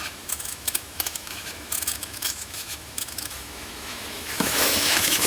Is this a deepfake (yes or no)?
yes